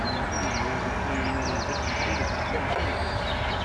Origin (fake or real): real